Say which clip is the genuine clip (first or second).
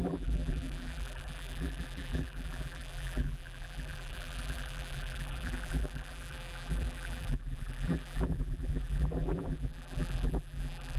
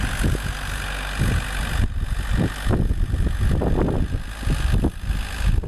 second